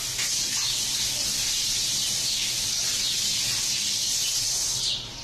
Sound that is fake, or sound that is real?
real